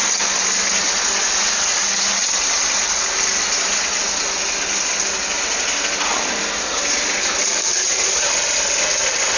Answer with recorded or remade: recorded